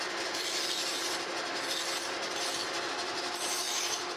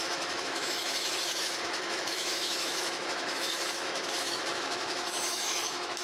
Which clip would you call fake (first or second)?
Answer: second